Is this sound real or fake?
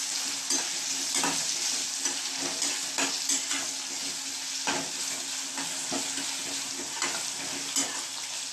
real